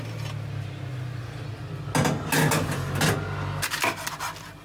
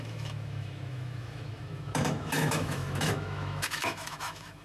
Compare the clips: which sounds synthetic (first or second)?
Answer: second